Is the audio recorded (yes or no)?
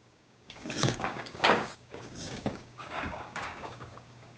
no